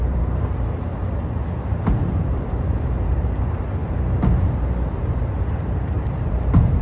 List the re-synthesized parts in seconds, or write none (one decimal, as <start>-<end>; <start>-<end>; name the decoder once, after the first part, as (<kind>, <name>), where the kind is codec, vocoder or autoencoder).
0.0-0.9 (vocoder, BigVGAN v2); 1.6-6.8

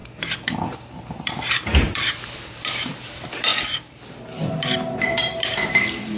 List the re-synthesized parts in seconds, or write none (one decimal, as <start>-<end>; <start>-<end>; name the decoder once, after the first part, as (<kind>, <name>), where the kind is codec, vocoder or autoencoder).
0.0-6.2 (vocoder, BigVGAN v2)

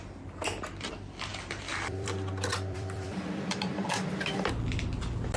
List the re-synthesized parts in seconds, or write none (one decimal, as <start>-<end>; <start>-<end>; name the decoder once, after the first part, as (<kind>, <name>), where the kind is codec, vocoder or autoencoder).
1.3-4.5 (vocoder, BigVGAN v2)